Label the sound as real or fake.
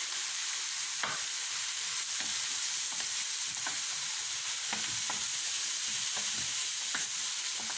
fake